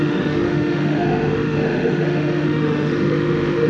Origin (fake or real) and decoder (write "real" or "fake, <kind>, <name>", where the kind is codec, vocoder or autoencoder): fake, autoencoder, DAC-VAE